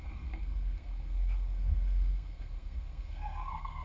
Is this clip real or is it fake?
fake